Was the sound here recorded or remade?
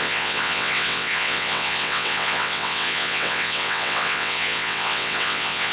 remade